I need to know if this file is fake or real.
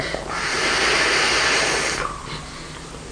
real